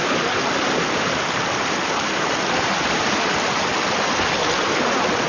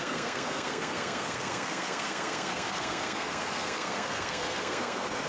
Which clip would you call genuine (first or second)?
first